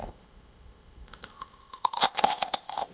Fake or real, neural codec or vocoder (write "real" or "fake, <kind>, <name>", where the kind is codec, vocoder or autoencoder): fake, codec, ZipCodec